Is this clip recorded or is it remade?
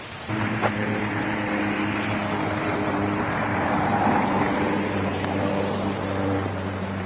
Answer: remade